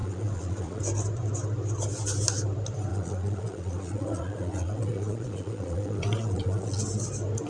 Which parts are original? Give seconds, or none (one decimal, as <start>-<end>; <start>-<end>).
0.8-2.9; 6.8-7.5

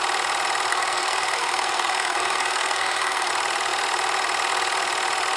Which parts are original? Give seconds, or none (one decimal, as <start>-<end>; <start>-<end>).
0.0-0.7; 3.3-5.4

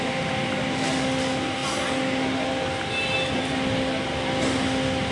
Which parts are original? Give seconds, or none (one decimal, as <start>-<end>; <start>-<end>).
0.0-5.1

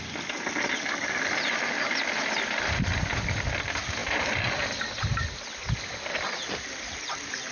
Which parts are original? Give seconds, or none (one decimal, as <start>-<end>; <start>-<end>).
0.0-7.5

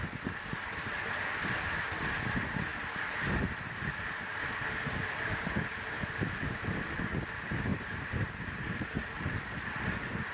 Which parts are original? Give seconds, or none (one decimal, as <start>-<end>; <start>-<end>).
0.0-7.7; 9.7-10.3